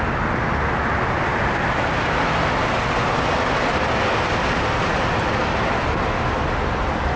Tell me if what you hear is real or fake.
real